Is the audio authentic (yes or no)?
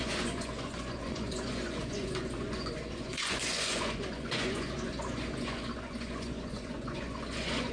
no